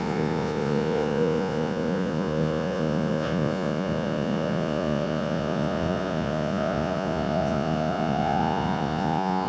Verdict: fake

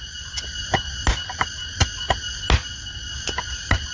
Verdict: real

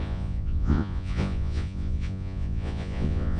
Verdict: fake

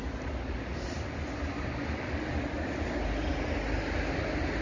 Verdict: real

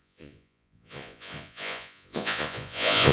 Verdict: fake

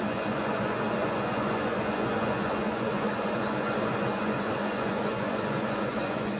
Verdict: fake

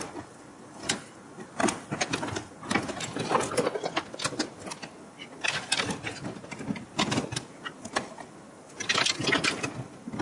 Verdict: real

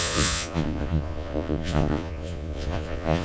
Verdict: fake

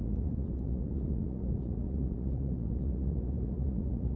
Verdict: fake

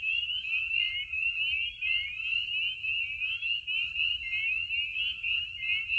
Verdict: real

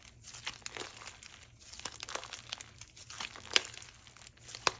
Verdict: real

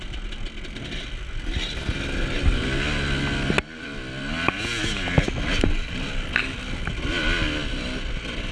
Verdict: real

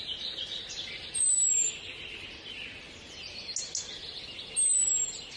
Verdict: real